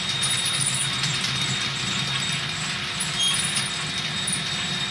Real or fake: real